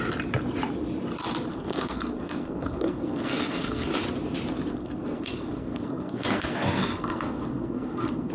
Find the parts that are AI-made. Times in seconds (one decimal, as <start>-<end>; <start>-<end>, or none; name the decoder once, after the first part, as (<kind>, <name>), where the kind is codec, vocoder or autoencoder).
1.5-3.9 (codec, SNAC); 4.7-8.3